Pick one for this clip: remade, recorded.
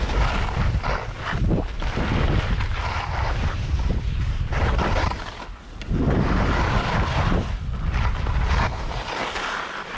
recorded